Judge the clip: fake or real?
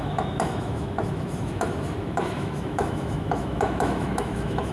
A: fake